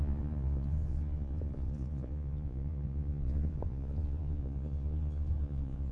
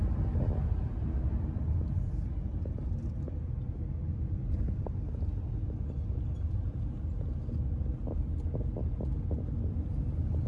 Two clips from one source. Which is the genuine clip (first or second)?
second